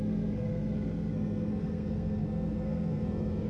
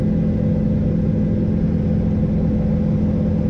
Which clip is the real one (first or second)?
second